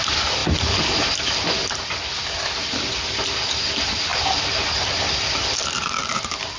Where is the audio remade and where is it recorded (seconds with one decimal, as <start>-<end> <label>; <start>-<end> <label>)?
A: 0.0-0.4 recorded; 0.4-1.4 remade; 1.4-4.1 recorded; 4.1-5.5 remade; 5.5-6.6 recorded

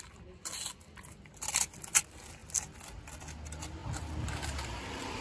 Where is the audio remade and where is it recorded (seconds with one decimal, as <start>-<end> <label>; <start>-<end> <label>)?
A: 0.0-5.2 recorded

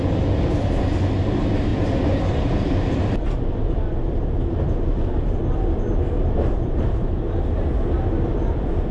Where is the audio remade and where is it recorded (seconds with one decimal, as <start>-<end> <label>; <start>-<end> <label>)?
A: 0.0-1.7 recorded; 1.7-2.2 remade; 2.2-8.9 recorded

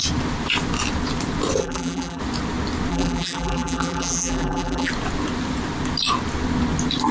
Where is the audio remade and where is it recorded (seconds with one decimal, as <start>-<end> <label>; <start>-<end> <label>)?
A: 0.0-1.6 recorded; 1.6-2.2 remade; 2.2-2.9 recorded; 2.9-4.9 remade; 4.9-7.1 recorded

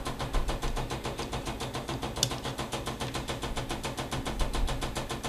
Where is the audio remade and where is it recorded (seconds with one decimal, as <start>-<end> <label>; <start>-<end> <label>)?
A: 0.0-5.3 recorded

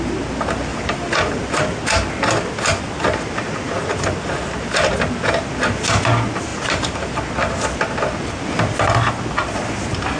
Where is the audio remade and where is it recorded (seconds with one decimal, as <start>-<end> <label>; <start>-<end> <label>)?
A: 0.0-0.7 recorded; 0.7-1.6 remade; 1.6-3.9 recorded; 3.9-4.4 remade; 4.4-6.5 recorded; 6.5-7.3 remade; 7.3-10.2 recorded

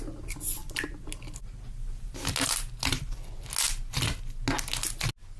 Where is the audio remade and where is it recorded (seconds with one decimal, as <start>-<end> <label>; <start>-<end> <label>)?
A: 0.0-5.4 recorded